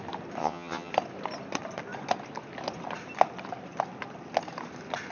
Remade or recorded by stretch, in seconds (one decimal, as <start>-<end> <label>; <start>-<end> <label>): 0.0-0.4 recorded; 0.4-0.9 remade; 0.9-5.1 recorded